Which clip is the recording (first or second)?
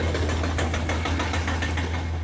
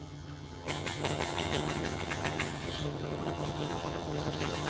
first